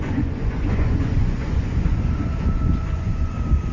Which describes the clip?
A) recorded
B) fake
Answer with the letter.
B